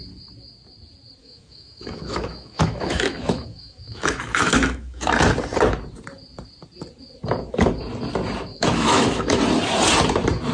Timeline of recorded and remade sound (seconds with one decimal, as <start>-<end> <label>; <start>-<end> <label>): 0.0-1.2 recorded; 1.2-5.1 remade; 5.1-8.5 recorded; 8.5-9.4 remade; 9.4-10.5 recorded